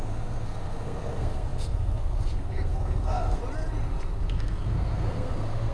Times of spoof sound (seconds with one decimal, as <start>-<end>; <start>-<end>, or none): 0.0-3.4; 4.3-5.7